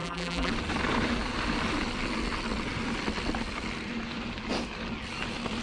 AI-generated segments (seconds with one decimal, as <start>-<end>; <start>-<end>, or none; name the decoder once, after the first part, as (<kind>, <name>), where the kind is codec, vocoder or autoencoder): 0.0-0.5 (vocoder, BigVGAN v2)